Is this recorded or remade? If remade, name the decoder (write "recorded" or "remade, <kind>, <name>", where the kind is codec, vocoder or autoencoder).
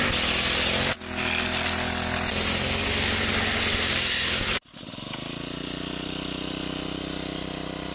recorded